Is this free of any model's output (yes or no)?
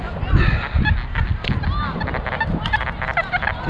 yes